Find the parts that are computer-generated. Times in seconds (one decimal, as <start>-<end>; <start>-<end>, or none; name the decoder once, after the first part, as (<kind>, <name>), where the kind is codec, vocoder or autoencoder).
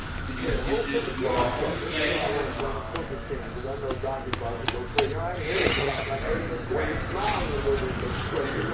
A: 5.6-6.1 (vocoder, HiFi-GAN)